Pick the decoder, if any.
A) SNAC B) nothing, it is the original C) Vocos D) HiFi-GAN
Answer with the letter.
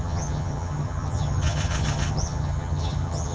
D